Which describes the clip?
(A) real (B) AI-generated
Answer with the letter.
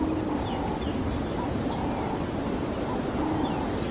A